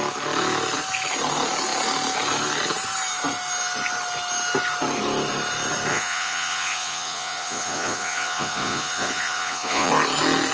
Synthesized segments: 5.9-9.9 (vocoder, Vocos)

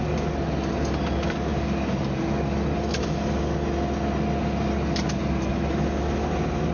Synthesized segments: none

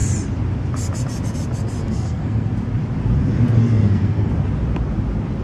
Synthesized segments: 1.8-2.5 (codec, SNAC); 3.6-4.3